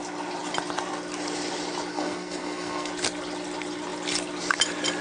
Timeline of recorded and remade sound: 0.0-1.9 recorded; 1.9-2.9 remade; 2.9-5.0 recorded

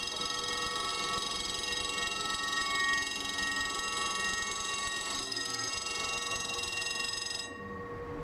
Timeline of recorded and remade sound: 0.0-5.2 recorded; 5.2-5.7 remade; 5.7-8.2 recorded

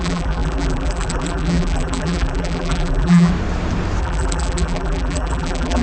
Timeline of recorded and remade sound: 0.0-3.3 remade; 3.3-4.0 recorded; 4.0-5.8 remade